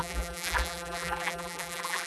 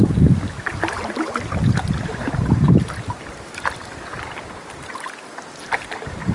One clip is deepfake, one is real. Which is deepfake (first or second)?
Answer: first